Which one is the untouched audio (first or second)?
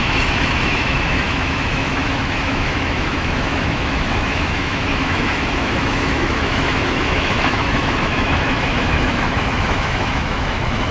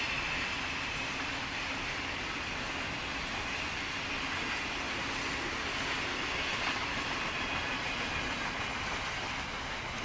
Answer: second